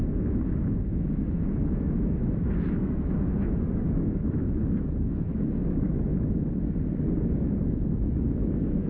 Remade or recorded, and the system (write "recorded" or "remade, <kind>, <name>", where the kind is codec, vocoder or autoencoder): remade, autoencoder, DAC-VAE